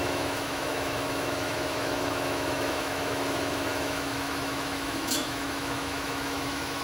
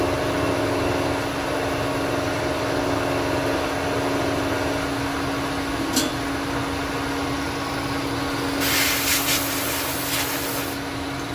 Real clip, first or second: second